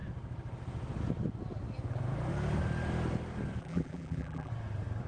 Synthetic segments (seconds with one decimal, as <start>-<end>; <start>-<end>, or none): 3.6-4.5